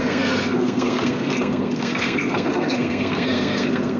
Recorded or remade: remade